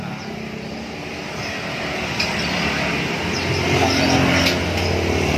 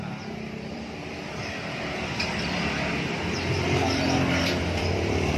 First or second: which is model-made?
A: second